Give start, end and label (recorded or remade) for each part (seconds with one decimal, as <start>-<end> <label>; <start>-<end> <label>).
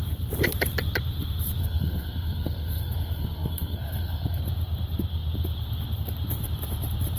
0.0-1.6 recorded; 1.6-4.4 remade; 4.4-7.2 recorded